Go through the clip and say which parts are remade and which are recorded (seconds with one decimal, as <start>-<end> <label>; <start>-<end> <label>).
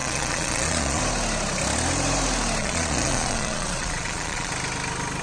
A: 0.0-1.0 remade; 1.0-2.6 recorded; 2.6-4.5 remade; 4.5-5.2 recorded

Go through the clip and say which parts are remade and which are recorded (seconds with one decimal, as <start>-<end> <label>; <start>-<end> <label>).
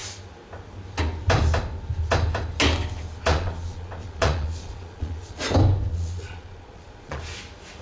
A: 0.0-3.3 recorded; 3.3-5.4 remade; 5.4-5.9 recorded; 5.9-7.2 remade; 7.2-7.8 recorded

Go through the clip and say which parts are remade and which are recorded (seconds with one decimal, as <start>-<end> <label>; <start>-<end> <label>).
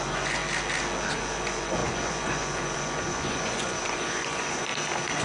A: 0.0-0.4 remade; 0.4-1.1 recorded; 1.1-4.7 remade; 4.7-5.2 recorded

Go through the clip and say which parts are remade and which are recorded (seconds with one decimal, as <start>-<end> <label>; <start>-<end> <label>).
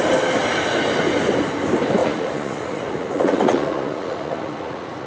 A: 0.0-2.0 recorded; 2.0-5.1 remade